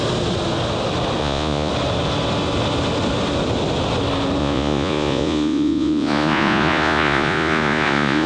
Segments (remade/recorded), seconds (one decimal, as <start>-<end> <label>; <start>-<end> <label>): 0.0-1.2 recorded; 1.2-1.7 remade; 1.7-4.4 recorded; 4.4-8.3 remade